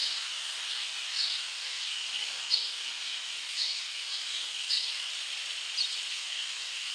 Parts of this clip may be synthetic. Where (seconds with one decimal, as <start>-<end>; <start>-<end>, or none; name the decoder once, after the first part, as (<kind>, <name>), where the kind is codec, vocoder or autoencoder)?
0.0-5.1 (codec, DAC); 6.1-6.9